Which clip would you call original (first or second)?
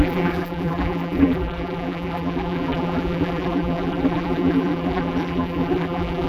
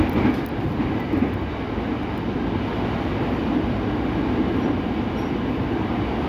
second